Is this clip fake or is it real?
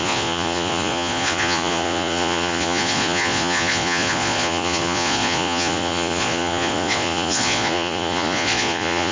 fake